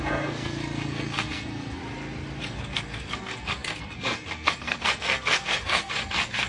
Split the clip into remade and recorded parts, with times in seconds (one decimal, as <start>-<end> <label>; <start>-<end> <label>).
0.0-1.8 remade; 1.8-2.4 recorded; 2.4-6.5 remade